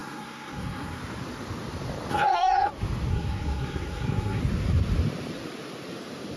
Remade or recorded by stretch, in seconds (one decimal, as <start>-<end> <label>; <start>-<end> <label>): 0.0-1.0 remade; 1.0-2.1 recorded; 2.1-2.7 remade; 2.7-3.1 recorded; 3.1-4.4 remade; 4.4-6.4 recorded